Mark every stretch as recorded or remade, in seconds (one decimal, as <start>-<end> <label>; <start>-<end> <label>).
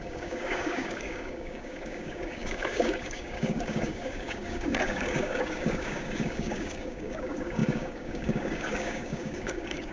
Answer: 0.0-9.9 remade